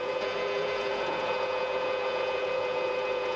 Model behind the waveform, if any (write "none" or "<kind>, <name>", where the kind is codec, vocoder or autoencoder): vocoder, Vocos